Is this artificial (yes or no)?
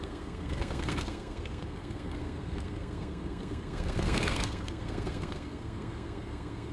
yes